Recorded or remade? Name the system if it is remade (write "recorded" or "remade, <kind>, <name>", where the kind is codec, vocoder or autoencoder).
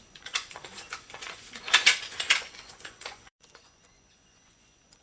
remade, vocoder, Vocos